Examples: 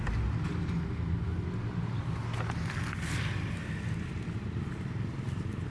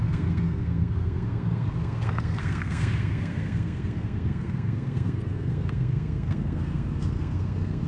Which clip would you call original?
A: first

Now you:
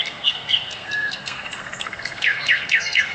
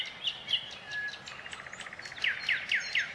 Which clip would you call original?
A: second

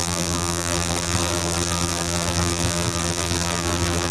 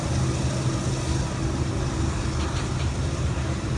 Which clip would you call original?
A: second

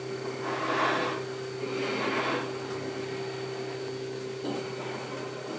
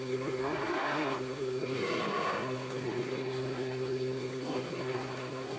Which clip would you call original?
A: first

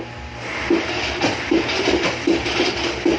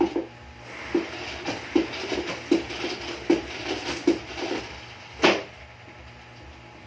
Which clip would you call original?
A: second